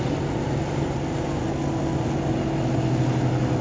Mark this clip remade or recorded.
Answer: recorded